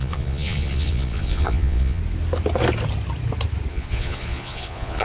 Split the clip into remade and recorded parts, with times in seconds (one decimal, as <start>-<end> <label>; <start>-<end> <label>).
0.0-2.0 remade; 2.0-3.7 recorded; 3.7-5.0 remade